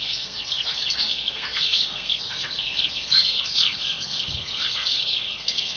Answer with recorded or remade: remade